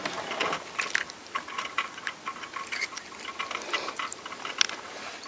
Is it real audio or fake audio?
real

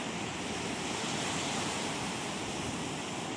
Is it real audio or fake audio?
real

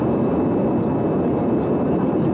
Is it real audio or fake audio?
real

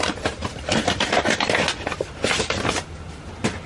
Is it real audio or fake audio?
fake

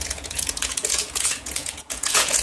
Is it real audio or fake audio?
fake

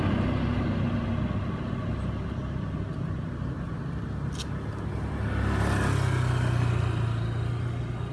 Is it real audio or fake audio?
real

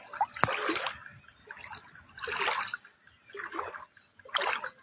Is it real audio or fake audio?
real